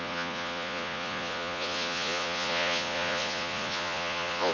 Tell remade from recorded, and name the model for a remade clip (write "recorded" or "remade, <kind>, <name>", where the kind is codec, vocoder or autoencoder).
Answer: remade, vocoder, Vocos